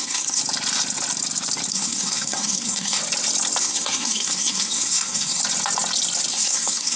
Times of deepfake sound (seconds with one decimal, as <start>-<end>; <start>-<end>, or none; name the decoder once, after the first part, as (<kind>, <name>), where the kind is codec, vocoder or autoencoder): 0.0-0.4 (codec, SNAC); 1.7-3.0; 3.6-5.4; 6.3-7.0